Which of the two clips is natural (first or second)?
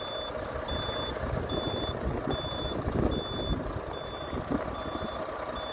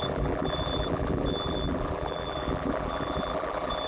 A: first